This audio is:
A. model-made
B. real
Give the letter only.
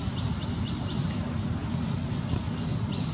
B